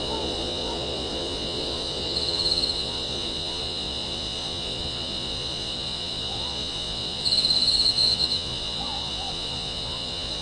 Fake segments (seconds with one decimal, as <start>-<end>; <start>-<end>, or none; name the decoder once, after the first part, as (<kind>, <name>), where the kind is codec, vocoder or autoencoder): 0.0-10.4 (vocoder, Vocos)